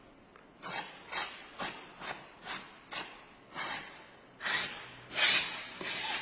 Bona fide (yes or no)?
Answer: yes